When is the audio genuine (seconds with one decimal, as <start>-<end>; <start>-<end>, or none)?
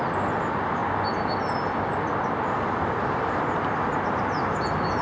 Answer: 0.0-5.0